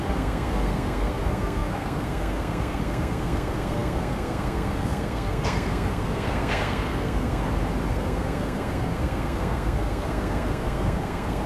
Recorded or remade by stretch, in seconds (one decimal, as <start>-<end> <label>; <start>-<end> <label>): 0.0-7.4 remade; 7.4-7.9 recorded; 7.9-11.5 remade